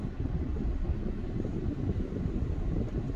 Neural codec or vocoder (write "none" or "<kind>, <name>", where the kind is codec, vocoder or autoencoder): none